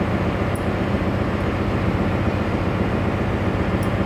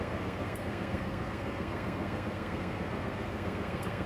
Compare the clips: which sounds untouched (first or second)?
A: first